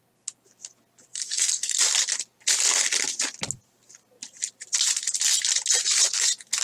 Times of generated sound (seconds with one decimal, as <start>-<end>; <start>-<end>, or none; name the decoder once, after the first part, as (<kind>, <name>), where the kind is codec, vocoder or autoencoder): 1.1-1.8 (codec, SNAC)